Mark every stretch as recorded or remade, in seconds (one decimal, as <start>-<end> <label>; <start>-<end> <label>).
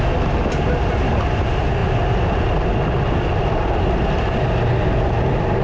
0.0-5.6 recorded